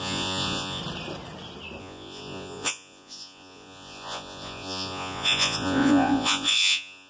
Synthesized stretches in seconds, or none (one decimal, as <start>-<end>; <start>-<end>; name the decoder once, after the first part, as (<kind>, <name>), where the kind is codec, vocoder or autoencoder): 0.0-0.8 (vocoder, Vocos); 1.8-7.1